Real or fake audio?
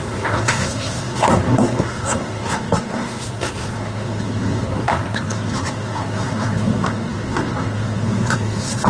fake